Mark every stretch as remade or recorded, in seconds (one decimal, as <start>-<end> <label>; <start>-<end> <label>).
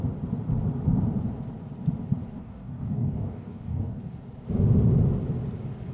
0.0-2.4 recorded; 2.4-4.0 remade; 4.0-5.9 recorded